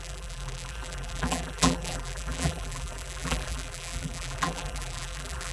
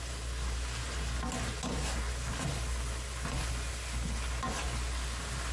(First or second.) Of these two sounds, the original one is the second